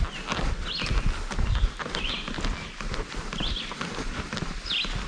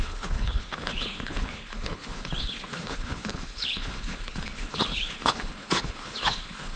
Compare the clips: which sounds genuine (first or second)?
first